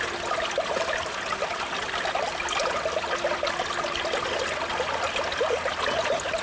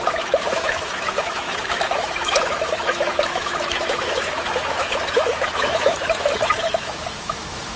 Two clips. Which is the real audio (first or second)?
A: first